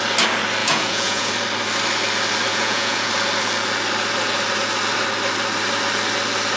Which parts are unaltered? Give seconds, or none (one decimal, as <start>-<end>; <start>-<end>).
0.0-0.6; 1.3-2.5; 3.1-6.6